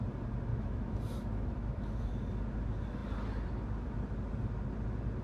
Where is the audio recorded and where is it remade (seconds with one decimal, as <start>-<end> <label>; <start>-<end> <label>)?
0.0-0.5 recorded; 0.5-2.1 remade; 2.1-5.2 recorded